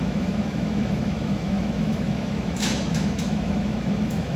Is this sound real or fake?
fake